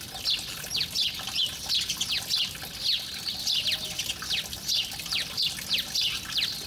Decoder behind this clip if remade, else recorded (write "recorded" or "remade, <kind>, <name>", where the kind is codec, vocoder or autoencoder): recorded